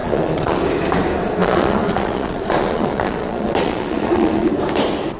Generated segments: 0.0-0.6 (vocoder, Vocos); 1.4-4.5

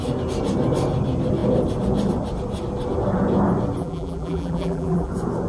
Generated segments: 3.8-5.1 (vocoder, BigVGAN v2)

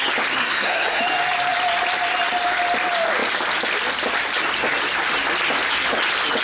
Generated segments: 0.4-1.0 (codec, SNAC)

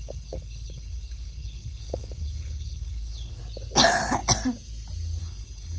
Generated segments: 0.0-3.4 (codec, HILCodec); 5.2-5.8